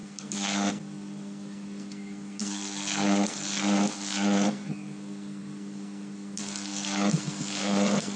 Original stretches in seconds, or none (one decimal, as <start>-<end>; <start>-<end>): none